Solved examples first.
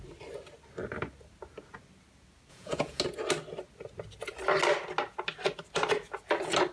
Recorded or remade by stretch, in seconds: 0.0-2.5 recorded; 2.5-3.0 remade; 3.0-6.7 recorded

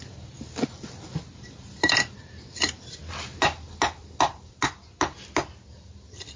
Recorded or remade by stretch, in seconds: 0.0-6.4 recorded

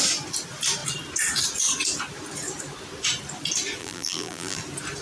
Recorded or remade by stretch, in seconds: 0.0-3.8 recorded; 3.8-4.6 remade; 4.6-5.0 recorded

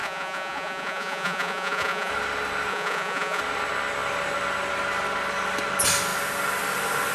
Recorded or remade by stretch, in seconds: 0.0-2.1 remade; 2.1-2.7 recorded; 2.7-3.4 remade; 3.4-7.1 recorded

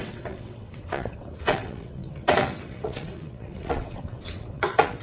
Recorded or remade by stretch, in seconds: 0.0-5.0 remade

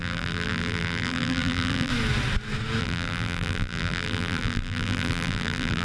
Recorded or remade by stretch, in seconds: 0.0-1.9 remade; 1.9-2.8 recorded; 2.8-5.8 remade

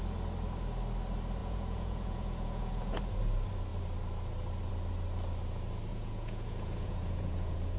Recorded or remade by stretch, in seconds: 0.0-1.4 recorded; 1.4-3.0 remade; 3.0-5.9 recorded; 5.9-7.8 remade

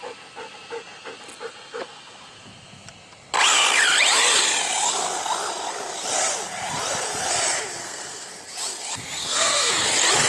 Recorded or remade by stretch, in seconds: 0.0-7.8 recorded; 7.8-8.3 remade; 8.3-9.2 recorded; 9.2-9.7 remade; 9.7-10.3 recorded